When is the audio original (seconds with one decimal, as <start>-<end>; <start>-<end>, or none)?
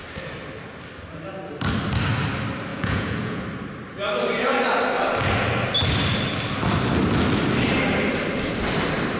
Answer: 0.0-2.7; 3.4-9.2